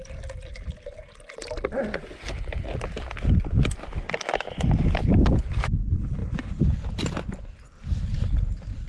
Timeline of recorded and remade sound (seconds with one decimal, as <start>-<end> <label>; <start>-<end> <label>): 0.0-8.9 recorded